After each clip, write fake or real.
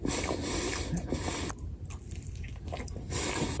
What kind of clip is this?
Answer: real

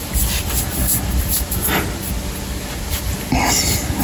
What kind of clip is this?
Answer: real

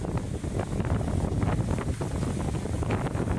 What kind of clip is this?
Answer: real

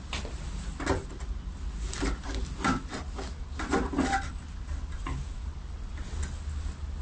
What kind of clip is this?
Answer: real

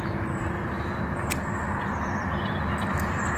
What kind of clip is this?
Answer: real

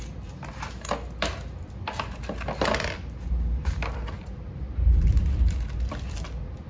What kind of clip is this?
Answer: real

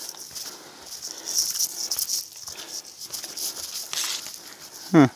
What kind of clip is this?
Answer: real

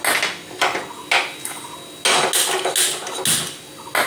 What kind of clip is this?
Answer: real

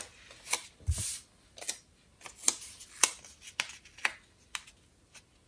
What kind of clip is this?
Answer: real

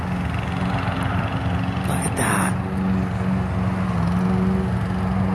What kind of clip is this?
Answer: real